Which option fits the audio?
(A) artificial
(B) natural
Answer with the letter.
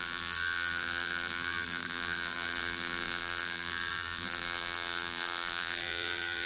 A